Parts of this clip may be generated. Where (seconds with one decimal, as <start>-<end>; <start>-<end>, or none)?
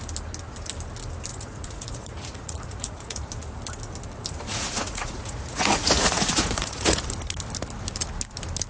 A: 1.3-3.3; 4.5-7.0